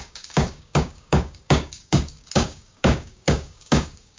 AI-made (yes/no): yes